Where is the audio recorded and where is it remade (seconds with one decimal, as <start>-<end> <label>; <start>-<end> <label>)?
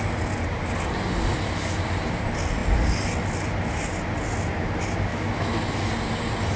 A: 0.0-5.1 recorded; 5.1-5.7 remade; 5.7-6.6 recorded